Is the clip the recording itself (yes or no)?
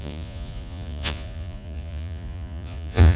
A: no